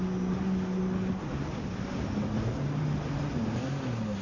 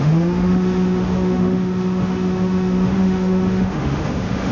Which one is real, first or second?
first